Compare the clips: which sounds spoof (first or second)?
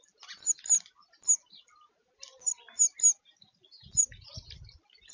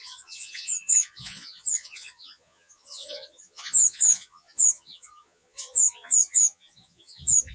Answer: second